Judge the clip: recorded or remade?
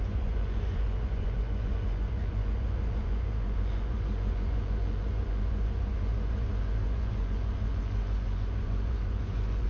remade